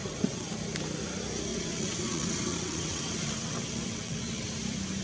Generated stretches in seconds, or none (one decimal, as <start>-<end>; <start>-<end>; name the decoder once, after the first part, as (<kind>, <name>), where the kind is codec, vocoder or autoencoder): 0.0-0.5 (vocoder, WaveNeXt); 1.5-4.5